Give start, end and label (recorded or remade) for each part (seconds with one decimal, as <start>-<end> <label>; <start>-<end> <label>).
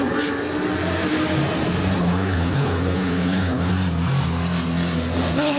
0.0-2.0 recorded; 2.0-3.7 remade; 3.7-5.6 recorded